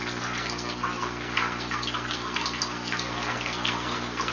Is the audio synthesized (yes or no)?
yes